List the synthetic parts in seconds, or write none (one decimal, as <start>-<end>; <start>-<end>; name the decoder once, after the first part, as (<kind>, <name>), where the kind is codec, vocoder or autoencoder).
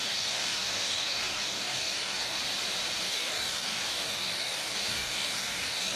0.0-2.4 (codec, DAC); 3.0-6.0